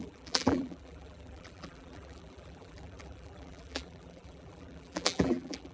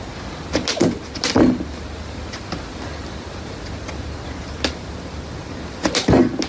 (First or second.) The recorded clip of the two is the second